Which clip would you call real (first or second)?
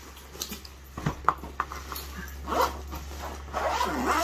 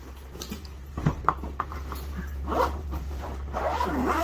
first